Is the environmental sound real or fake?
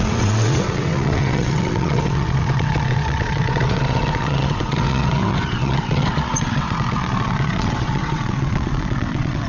fake